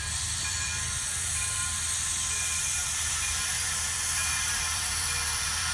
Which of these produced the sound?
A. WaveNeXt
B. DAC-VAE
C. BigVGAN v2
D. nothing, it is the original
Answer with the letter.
C